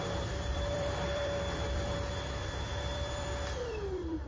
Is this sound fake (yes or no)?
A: yes